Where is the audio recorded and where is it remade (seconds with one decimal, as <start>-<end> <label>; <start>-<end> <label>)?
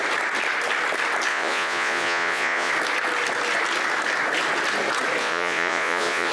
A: 0.0-1.3 recorded; 1.3-2.7 remade; 2.7-5.2 recorded; 5.2-6.3 remade